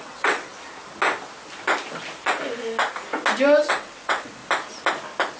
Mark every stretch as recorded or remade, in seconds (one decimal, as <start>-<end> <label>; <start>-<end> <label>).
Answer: 0.0-0.5 remade; 0.5-3.7 recorded; 3.7-4.4 remade; 4.4-5.4 recorded